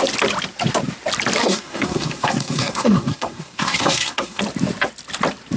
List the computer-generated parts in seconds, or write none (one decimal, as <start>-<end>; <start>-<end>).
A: 1.4-4.4